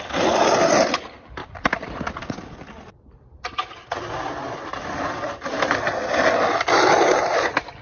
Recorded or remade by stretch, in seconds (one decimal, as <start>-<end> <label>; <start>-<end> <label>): 0.0-7.8 remade